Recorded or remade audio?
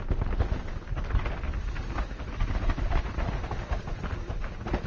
recorded